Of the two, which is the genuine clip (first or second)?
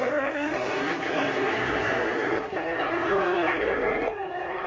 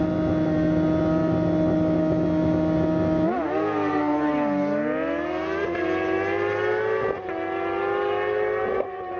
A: second